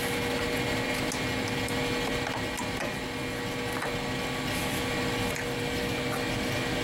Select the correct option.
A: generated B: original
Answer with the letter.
B